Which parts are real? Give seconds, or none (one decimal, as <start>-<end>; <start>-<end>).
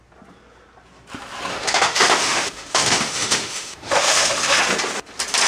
0.0-1.5; 4.6-5.5